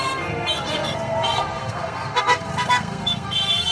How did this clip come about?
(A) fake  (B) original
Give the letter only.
A